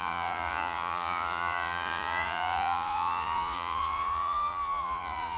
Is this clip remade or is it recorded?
remade